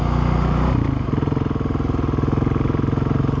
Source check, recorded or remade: recorded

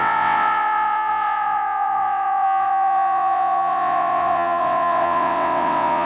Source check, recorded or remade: remade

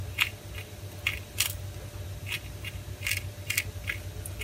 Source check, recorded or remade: recorded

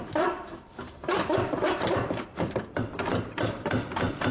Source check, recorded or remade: remade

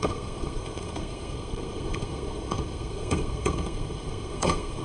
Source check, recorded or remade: remade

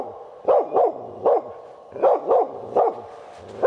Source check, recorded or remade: recorded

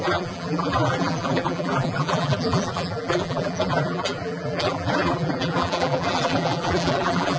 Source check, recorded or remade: remade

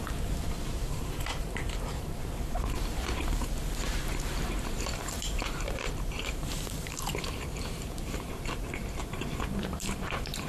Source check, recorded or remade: remade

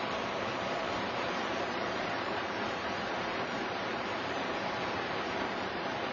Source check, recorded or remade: remade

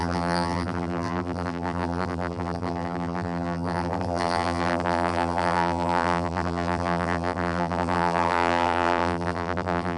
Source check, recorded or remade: remade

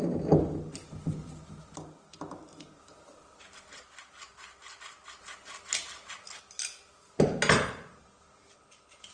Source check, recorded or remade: recorded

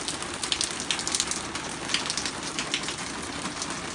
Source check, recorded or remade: recorded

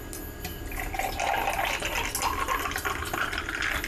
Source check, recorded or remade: recorded